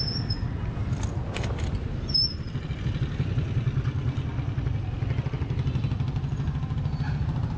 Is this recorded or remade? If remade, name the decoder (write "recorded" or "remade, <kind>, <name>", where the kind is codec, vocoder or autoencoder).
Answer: recorded